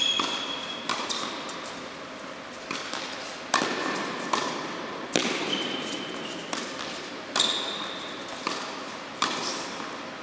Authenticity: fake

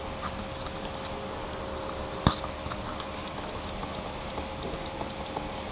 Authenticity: real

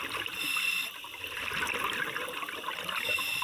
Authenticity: real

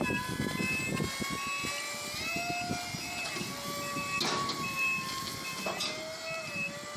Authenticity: real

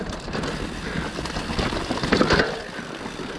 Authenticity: real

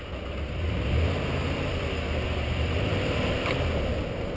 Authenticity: fake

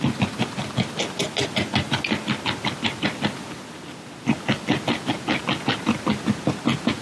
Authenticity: real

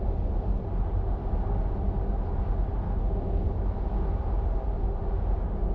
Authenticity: real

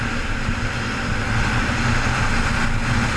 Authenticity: real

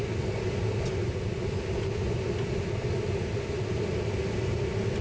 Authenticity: real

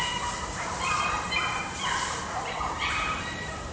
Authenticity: fake